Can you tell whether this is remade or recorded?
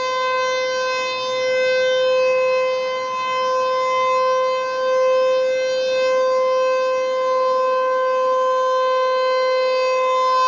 recorded